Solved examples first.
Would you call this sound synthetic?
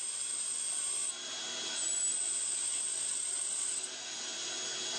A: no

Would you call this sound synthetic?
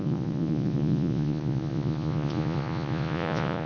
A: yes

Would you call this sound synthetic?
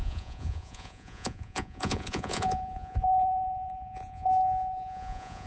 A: yes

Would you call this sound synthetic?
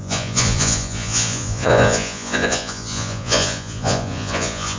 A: yes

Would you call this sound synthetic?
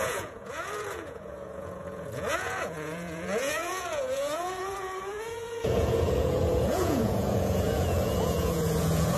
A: yes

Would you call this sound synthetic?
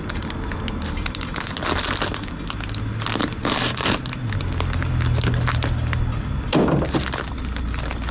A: no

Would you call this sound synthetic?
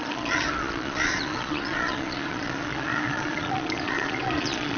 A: yes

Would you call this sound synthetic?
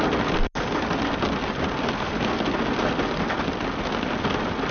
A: no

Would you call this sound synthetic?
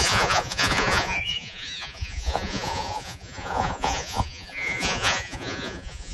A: yes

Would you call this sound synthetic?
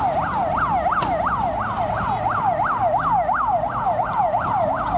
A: no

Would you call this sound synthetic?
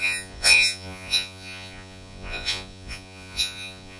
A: yes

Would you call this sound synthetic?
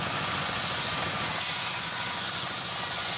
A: yes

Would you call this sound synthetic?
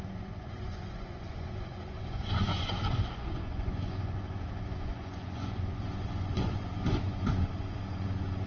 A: yes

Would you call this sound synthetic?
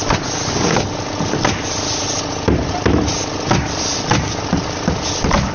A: no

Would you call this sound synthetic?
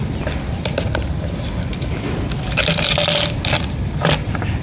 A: no